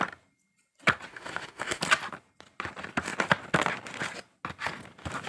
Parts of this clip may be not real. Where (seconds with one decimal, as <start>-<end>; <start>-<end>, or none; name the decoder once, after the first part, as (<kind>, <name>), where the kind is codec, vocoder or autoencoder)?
1.1-1.8 (autoencoder, DAC-VAE)